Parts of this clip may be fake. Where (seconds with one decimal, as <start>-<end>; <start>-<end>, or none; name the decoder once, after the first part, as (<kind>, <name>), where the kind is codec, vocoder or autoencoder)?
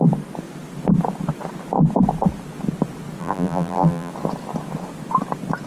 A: 3.2-4.1 (vocoder, BigVGAN v2)